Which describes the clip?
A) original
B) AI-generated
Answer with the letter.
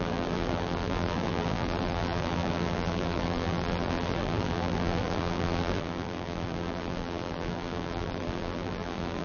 B